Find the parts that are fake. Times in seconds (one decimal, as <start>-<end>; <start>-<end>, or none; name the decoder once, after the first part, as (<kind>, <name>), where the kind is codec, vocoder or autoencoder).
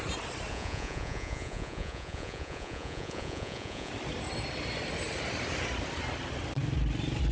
0.5-3.9 (vocoder, Vocos)